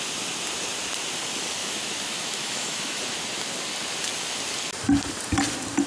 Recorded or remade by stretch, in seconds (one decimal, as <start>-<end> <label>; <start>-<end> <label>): 0.0-1.6 recorded; 1.6-3.0 remade; 3.0-5.9 recorded